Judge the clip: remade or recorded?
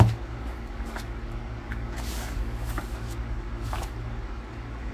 remade